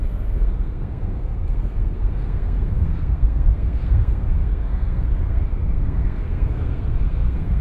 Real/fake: fake